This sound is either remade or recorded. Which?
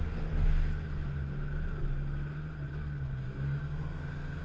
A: recorded